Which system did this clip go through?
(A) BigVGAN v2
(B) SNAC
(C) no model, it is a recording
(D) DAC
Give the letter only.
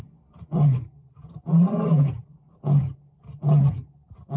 C